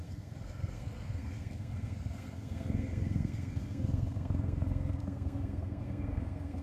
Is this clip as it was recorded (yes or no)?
no